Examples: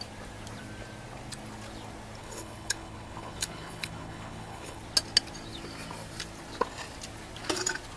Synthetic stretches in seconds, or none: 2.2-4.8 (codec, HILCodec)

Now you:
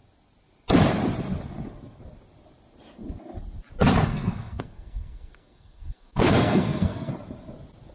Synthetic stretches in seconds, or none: 4.1-7.1 (codec, SNAC)

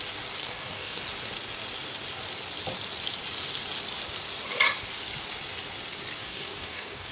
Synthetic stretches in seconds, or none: 0.4-1.0 (codec, DAC); 6.2-7.1

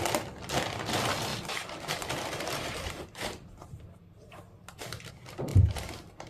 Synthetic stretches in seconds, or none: 1.3-5.1 (vocoder, BigVGAN v2); 5.5-6.3

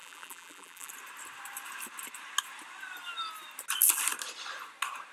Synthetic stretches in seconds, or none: 0.0-0.9 (vocoder, BigVGAN v2)

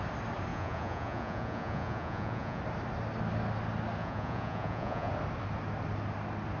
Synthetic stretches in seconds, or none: 0.5-2.6 (vocoder, Vocos); 4.0-5.1

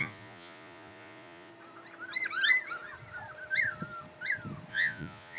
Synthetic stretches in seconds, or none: 0.0-1.5 (vocoder, Vocos); 4.7-5.4

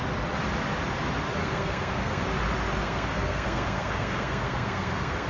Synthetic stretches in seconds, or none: 1.4-2.2 (codec, SNAC); 2.8-5.3